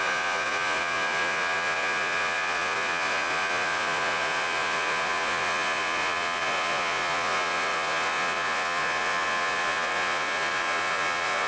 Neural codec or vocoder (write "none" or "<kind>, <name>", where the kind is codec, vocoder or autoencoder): vocoder, Vocos